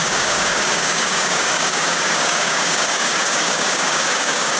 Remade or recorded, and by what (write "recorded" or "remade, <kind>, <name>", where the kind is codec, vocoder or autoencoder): remade, codec, DAC